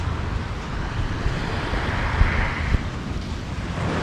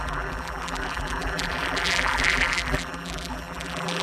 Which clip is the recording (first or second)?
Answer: first